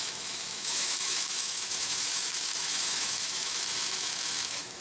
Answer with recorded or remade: remade